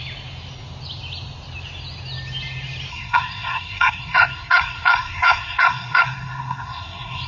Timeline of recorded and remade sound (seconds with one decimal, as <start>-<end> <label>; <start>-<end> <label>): 0.0-2.9 recorded; 2.9-7.3 remade